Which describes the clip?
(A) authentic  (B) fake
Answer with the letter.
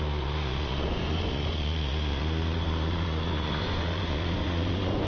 B